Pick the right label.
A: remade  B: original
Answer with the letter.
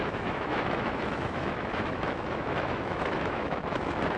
A